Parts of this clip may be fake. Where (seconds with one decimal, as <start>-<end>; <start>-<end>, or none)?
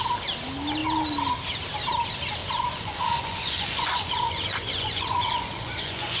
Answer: 2.4-6.2